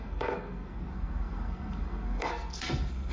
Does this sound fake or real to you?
fake